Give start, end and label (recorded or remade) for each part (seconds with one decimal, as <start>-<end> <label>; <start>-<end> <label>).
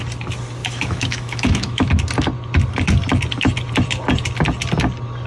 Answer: 0.0-0.6 recorded; 0.6-1.9 remade; 1.9-5.3 recorded